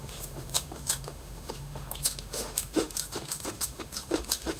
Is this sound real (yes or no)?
no